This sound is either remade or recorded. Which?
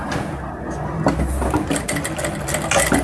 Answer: recorded